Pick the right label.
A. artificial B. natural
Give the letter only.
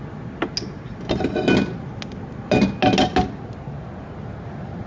B